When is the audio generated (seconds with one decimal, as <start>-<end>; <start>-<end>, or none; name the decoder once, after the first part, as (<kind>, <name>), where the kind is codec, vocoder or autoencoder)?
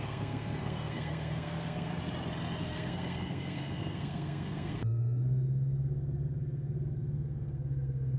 0.0-1.9 (codec, SNAC); 2.6-8.2